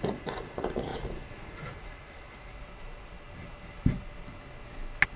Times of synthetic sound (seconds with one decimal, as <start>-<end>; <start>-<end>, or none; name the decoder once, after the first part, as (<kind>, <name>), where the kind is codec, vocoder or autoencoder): 0.0-2.5 (vocoder, Vocos)